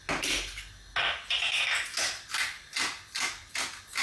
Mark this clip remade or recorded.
recorded